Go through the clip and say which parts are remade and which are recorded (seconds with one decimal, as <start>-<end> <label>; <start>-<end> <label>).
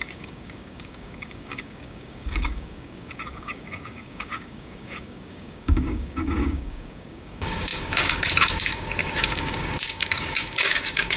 0.0-11.2 remade